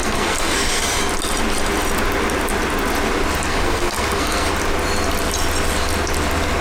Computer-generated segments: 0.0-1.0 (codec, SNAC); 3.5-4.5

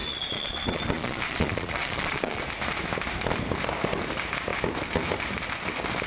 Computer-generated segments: 0.0-2.4 (vocoder, Vocos)

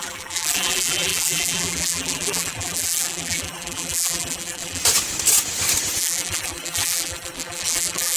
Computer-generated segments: 0.0-4.8 (vocoder, BigVGAN v2); 6.0-8.2

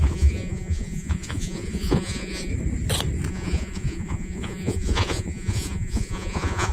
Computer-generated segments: 0.0-2.5 (vocoder, Vocos); 3.3-6.7

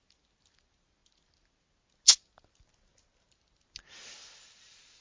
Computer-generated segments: none

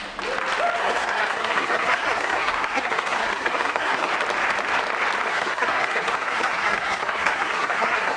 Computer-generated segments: 0.8-4.1 (codec, SNAC); 5.3-8.2

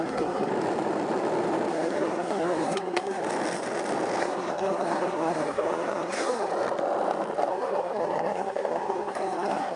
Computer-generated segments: 0.0-0.5 (codec, SNAC); 1.7-3.2; 4.2-6.5; 7.5-9.8

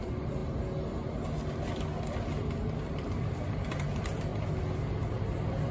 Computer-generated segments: 0.0-0.4 (vocoder, BigVGAN v2); 2.7-4.3; 4.9-5.7